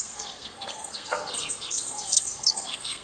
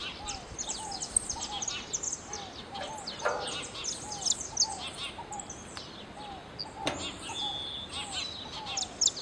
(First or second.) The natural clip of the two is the second